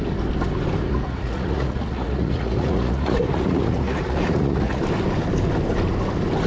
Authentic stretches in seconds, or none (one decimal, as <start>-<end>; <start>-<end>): 0.0-0.9; 4.8-6.5